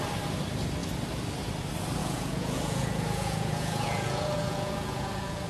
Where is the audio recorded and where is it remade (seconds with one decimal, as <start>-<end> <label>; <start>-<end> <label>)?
0.0-2.0 recorded; 2.0-5.5 remade